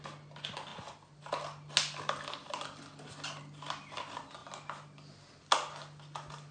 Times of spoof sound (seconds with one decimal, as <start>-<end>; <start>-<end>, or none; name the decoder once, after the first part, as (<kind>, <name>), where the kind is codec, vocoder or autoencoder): none